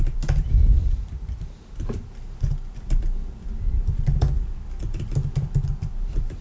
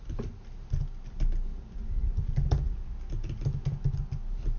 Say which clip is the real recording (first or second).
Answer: second